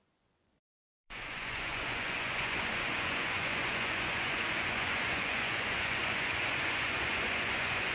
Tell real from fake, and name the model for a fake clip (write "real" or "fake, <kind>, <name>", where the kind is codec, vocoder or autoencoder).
fake, vocoder, Vocos